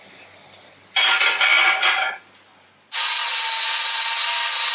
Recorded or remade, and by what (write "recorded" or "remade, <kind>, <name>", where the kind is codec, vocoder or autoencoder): recorded